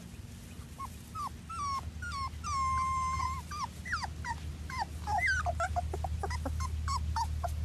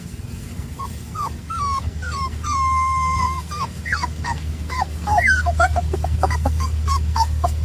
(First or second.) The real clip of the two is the first